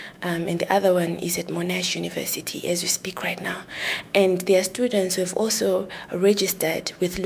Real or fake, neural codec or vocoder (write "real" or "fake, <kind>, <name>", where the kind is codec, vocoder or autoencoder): fake, autoencoder, DAC-VAE